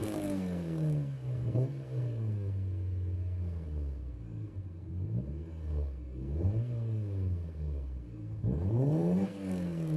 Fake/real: fake